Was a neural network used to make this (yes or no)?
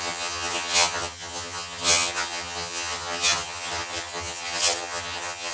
yes